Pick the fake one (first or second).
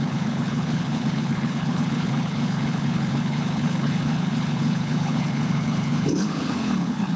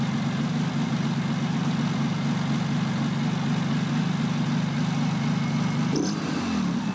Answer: first